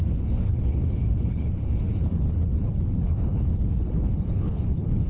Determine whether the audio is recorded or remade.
remade